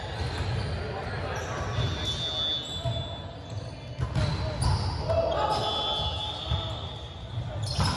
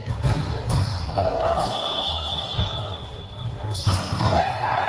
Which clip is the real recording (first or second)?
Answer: first